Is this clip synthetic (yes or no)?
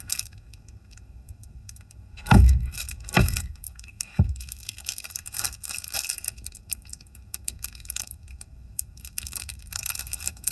yes